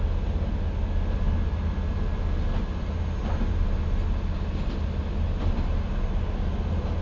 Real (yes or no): yes